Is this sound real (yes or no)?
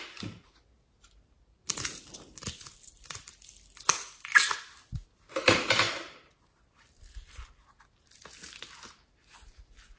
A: yes